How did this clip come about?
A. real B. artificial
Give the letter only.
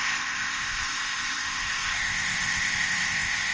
B